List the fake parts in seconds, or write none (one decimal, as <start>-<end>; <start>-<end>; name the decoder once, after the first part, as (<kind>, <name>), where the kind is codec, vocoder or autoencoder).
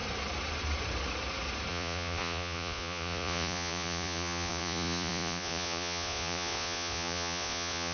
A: 1.7-7.9 (vocoder, Vocos)